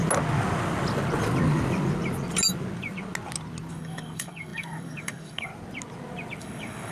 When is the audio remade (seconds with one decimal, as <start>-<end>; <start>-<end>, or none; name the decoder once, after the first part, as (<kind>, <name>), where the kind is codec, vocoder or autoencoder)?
3.7-5.5 (codec, DAC); 6.4-6.9